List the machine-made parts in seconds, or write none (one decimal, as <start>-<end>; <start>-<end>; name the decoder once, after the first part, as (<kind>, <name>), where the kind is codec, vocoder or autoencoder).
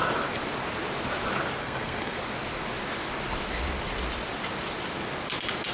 1.6-2.2 (codec, SNAC)